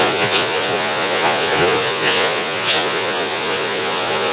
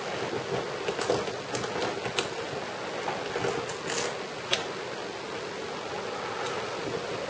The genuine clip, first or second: second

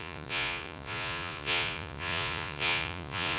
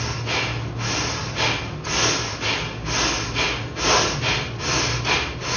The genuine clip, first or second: second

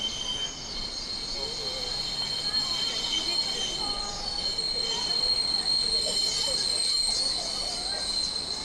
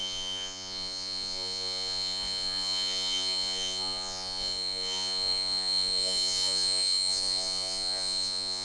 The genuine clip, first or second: first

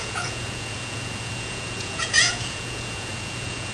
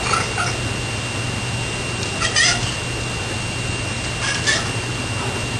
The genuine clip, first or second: second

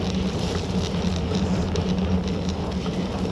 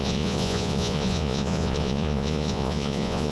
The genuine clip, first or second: first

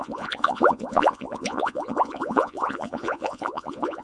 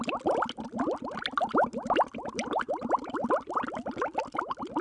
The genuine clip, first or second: second